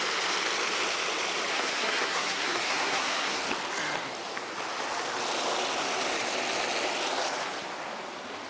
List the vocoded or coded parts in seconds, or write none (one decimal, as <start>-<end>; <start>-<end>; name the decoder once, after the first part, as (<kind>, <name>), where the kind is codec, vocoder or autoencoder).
1.5-3.4 (codec, SNAC)